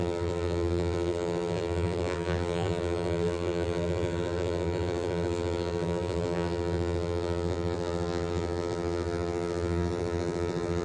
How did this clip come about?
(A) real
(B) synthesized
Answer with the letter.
B